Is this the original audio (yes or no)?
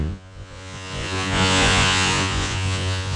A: no